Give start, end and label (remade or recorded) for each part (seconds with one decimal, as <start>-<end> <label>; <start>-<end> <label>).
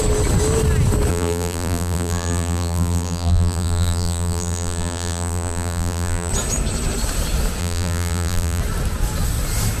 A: 0.0-1.1 recorded; 1.1-6.3 remade; 6.3-7.6 recorded; 7.6-8.6 remade; 8.6-9.8 recorded